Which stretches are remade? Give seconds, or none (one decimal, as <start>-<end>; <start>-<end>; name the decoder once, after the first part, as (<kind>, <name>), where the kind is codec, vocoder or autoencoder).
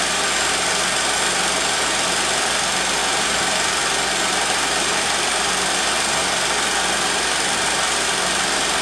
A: none